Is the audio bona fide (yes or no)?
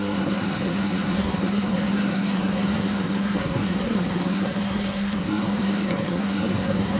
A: no